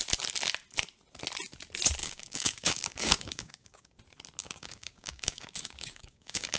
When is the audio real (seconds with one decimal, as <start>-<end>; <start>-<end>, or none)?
0.0-2.0; 4.0-4.4